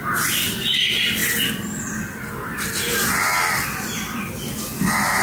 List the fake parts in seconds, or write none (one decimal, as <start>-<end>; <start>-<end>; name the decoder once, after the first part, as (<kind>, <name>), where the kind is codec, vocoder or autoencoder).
none